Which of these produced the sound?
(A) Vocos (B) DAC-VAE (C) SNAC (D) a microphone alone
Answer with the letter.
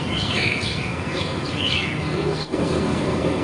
C